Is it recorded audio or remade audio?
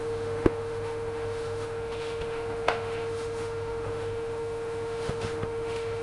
remade